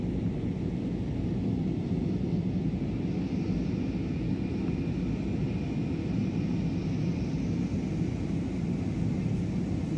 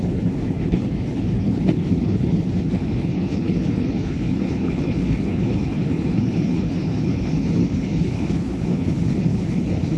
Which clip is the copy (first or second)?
second